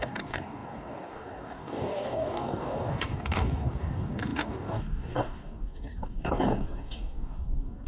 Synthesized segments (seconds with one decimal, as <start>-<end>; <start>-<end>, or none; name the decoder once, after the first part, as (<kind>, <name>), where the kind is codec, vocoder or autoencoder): 0.0-7.9 (codec, DAC)